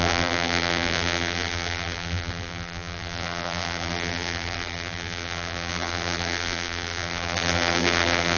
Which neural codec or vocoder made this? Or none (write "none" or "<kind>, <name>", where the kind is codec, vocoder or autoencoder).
vocoder, BigVGAN v2